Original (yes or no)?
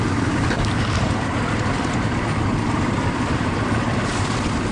no